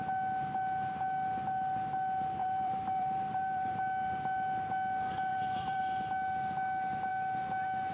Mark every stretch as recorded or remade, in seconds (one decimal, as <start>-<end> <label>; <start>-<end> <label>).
0.0-2.4 recorded; 2.4-3.7 remade; 3.7-5.3 recorded; 5.3-5.8 remade; 5.8-7.9 recorded